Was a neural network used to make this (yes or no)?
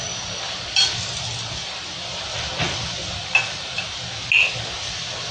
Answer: no